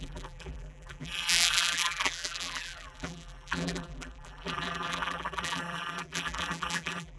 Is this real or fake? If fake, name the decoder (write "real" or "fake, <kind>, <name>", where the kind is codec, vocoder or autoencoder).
fake, vocoder, BigVGAN v2